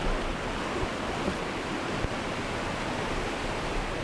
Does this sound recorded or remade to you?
recorded